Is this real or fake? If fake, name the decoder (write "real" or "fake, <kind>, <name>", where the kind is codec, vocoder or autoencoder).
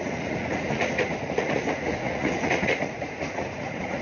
fake, vocoder, Vocos